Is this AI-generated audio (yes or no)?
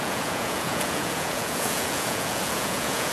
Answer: yes